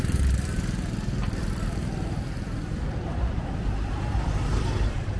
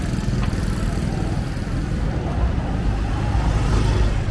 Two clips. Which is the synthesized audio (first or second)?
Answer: first